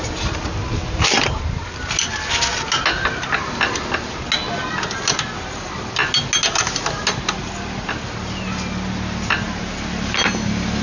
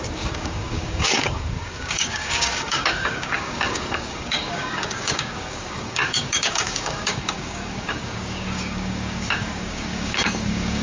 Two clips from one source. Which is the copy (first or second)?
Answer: second